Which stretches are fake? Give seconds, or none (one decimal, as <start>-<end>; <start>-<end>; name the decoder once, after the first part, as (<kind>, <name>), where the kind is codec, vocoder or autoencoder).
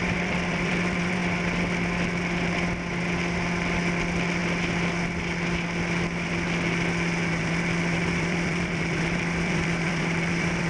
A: 0.0-1.2 (vocoder, BigVGAN v2); 4.0-4.4; 7.3-10.7